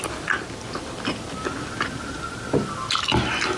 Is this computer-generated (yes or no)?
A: no